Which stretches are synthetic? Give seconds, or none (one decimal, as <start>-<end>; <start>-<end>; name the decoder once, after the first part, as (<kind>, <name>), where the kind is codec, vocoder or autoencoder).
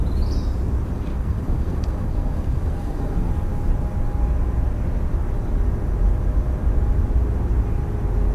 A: 1.1-3.3 (codec, SNAC)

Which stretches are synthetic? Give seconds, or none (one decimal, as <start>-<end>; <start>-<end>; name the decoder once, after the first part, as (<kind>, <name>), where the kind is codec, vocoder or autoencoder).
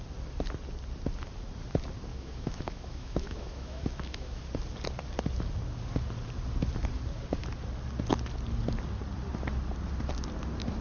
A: 2.1-4.4 (autoencoder, DAC-VAE)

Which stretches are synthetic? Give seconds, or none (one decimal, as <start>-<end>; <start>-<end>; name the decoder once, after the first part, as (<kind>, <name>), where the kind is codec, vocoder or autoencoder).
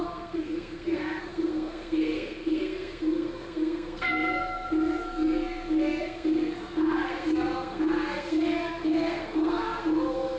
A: 0.0-10.4 (codec, SNAC)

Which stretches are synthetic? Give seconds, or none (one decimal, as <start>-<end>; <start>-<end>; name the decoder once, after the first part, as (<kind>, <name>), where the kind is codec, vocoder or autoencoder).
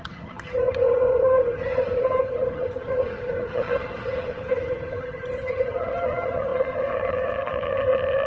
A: 0.0-8.3 (vocoder, HiFi-GAN)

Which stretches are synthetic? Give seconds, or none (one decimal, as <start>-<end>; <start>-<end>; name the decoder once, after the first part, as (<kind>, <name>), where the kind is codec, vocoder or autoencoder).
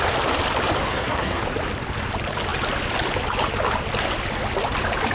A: 0.8-1.4 (codec, SNAC)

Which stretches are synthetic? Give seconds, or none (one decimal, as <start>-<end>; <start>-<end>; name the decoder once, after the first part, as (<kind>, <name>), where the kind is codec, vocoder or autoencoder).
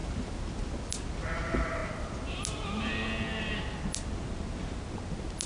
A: none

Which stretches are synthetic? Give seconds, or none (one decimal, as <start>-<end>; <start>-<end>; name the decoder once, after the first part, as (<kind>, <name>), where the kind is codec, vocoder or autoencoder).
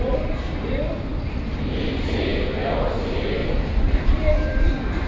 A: 0.0-2.3 (vocoder, BigVGAN v2); 2.8-5.1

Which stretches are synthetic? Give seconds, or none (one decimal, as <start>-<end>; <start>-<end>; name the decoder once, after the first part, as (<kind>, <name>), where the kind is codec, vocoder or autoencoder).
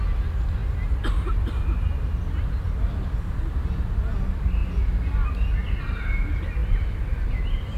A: 6.6-7.3 (vocoder, BigVGAN v2)